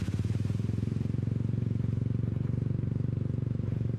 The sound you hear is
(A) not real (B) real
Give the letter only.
A